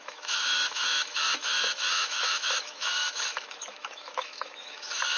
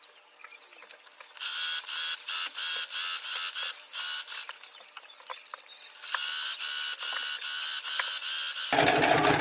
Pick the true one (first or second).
second